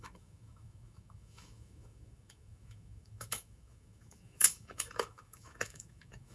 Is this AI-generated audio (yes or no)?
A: yes